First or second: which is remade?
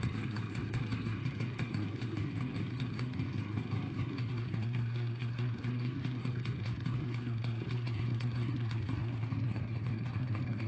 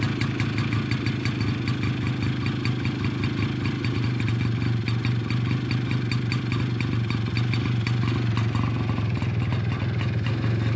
first